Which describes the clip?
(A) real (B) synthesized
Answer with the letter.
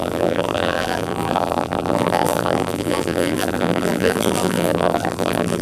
B